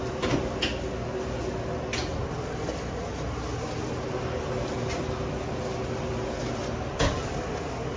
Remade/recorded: recorded